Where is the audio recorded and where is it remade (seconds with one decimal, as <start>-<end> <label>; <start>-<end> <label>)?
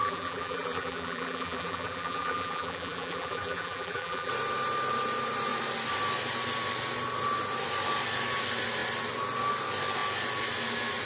0.0-4.3 remade; 4.3-11.1 recorded